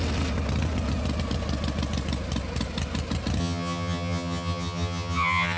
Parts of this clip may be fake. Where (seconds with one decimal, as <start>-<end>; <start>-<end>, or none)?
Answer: 3.4-5.6

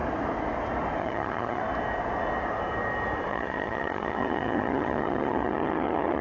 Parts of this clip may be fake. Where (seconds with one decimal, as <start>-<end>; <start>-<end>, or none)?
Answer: 1.0-1.6; 3.3-6.2

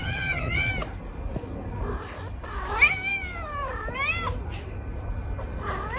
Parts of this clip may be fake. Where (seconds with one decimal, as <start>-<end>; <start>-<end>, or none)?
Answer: 0.0-0.7

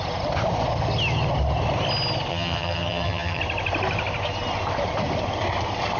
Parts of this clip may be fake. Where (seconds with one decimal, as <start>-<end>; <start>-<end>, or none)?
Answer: 2.3-3.4

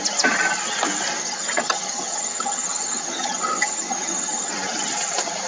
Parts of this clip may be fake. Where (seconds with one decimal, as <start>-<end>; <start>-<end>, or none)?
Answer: 1.2-4.5

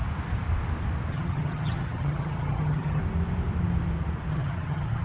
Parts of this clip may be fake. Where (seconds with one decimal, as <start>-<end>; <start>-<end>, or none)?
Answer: 1.1-3.0; 4.3-5.0

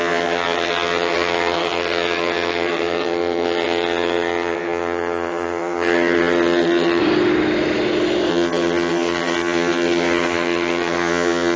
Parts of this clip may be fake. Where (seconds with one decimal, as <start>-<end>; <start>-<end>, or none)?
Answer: 0.0-7.0; 8.3-11.6